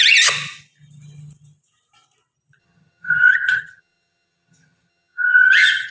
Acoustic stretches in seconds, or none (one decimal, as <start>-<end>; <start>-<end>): 0.0-2.6